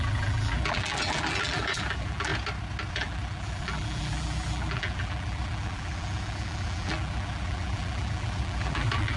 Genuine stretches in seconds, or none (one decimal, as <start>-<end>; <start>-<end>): 2.3-2.9

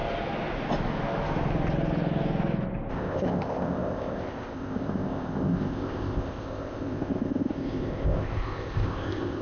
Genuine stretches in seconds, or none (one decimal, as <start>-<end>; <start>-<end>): 0.0-2.9

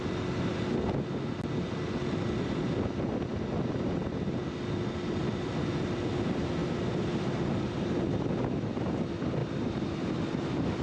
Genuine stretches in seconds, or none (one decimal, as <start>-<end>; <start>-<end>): 0.0-6.6; 8.3-9.4